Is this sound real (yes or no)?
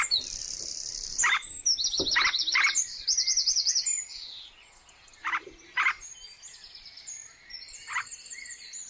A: no